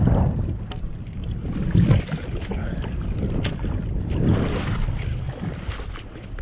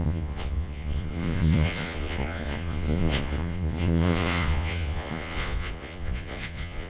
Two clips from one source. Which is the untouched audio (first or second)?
first